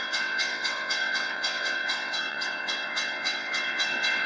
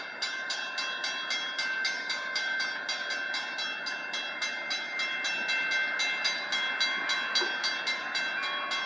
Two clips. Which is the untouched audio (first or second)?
second